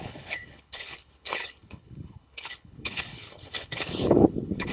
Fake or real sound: fake